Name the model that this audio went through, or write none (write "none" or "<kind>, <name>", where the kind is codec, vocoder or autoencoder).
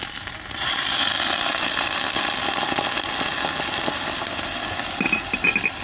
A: none